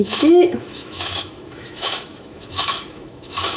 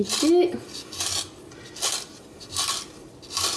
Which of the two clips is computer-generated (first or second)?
first